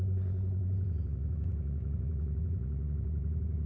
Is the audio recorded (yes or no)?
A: no